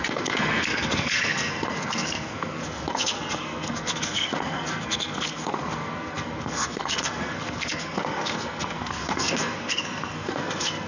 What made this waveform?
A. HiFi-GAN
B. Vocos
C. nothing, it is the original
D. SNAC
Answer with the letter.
D